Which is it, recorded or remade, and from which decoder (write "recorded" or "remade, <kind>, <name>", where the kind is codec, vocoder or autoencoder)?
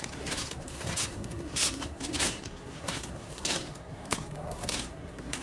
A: remade, codec, SNAC